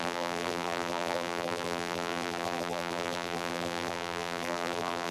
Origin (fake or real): fake